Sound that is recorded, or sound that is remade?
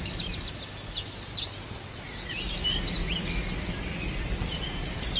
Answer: recorded